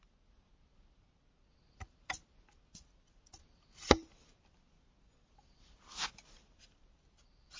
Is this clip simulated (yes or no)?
no